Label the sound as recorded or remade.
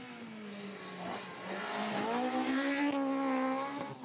recorded